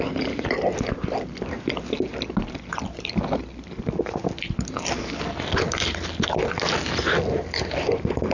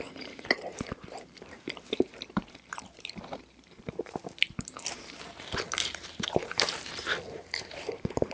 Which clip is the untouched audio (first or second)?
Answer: first